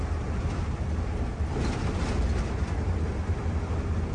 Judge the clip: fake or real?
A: real